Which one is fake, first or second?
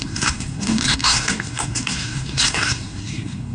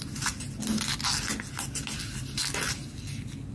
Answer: first